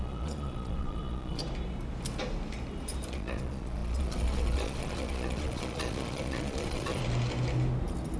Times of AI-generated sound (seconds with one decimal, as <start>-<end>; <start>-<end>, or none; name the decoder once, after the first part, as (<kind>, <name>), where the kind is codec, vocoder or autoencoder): 0.0-1.4 (vocoder, Vocos); 3.1-7.0